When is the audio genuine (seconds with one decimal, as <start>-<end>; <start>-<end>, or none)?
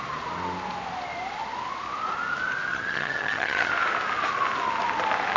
0.0-2.7; 3.7-5.4